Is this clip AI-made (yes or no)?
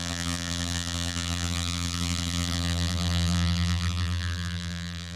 yes